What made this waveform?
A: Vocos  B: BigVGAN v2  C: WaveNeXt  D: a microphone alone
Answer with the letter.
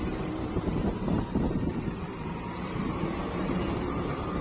B